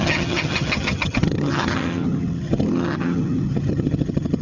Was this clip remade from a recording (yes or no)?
yes